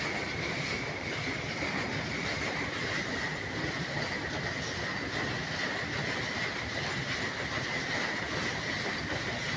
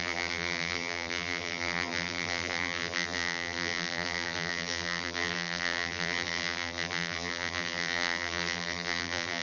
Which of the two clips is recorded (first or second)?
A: first